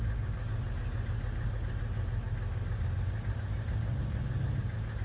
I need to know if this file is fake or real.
real